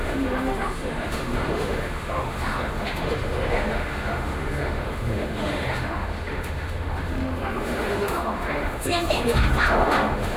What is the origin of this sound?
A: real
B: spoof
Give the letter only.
B